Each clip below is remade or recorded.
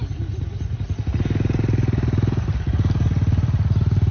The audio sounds recorded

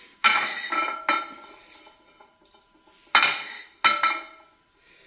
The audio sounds recorded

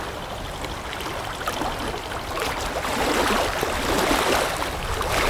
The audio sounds recorded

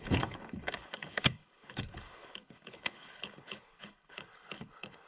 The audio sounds remade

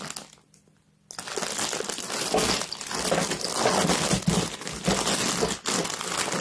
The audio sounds recorded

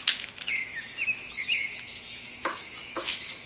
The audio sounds remade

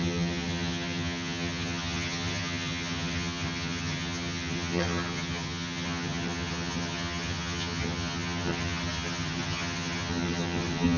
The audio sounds remade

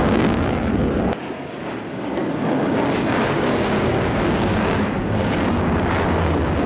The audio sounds remade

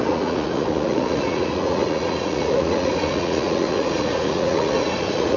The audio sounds remade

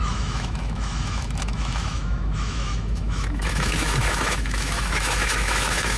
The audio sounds remade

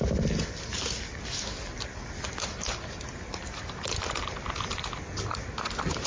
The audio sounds recorded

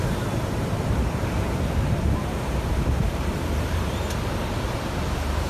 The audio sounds remade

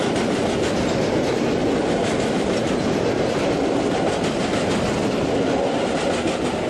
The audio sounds recorded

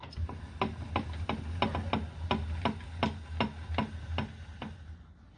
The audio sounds recorded